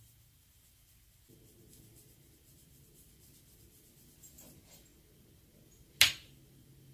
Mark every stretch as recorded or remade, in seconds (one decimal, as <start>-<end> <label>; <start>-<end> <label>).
0.0-6.9 recorded